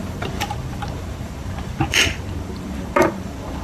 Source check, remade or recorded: remade